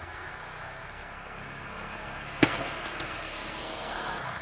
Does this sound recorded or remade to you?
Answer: remade